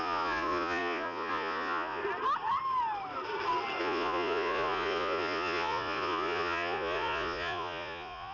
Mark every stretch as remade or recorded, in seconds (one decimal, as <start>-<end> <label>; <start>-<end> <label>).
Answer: 0.0-2.0 remade; 2.0-3.8 recorded; 3.8-8.3 remade